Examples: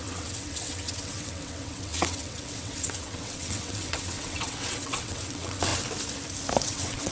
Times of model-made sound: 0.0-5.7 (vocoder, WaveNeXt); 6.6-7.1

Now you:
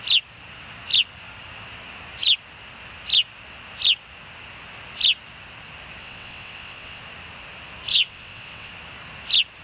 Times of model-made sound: 6.0-7.0 (vocoder, WaveNeXt); 7.9-8.7

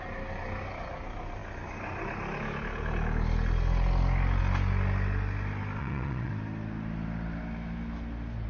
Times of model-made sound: 5.8-6.3 (vocoder, WaveNeXt)